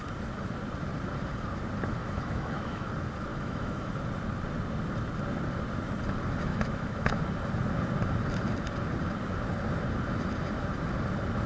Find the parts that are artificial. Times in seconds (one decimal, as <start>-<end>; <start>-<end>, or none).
2.0-2.9; 3.3-3.9; 6.5-7.2